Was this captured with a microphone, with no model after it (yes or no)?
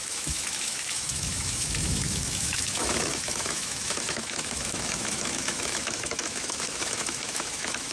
no